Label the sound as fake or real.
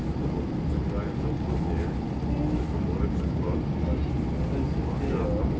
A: real